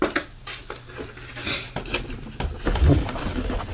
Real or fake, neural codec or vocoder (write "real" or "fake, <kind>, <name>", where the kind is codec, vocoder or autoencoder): real